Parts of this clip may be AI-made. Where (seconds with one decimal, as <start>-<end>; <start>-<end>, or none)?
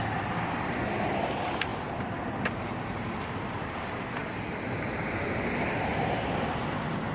0.0-1.7; 3.0-5.9